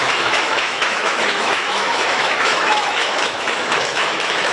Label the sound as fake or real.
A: fake